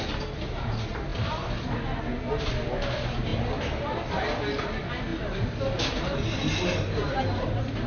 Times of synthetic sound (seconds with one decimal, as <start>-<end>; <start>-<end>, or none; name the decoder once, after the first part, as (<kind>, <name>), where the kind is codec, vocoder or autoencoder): none